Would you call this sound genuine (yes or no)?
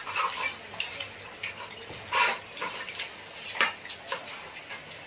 yes